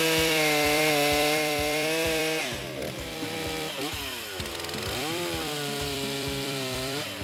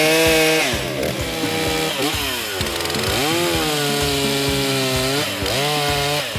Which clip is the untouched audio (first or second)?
second